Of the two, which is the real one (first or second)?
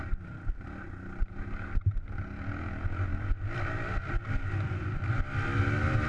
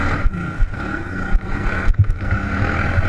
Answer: first